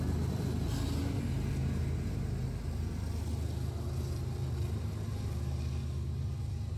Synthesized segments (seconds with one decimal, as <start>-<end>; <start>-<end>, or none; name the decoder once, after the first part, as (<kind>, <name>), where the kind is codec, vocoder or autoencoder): none